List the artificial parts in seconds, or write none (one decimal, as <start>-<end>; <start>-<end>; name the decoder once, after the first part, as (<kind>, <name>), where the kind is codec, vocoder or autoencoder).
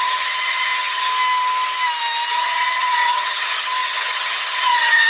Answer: 0.0-1.1 (vocoder, HiFi-GAN); 2.3-5.1